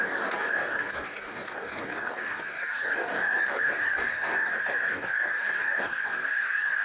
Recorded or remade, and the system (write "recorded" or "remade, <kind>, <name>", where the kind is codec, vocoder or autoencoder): remade, codec, DAC